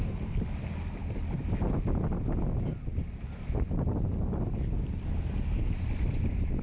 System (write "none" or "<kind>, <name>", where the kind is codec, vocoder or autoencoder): none